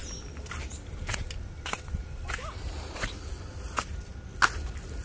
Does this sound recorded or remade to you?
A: recorded